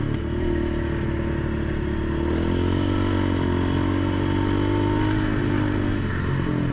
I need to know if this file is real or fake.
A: real